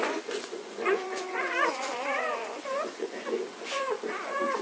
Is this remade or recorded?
remade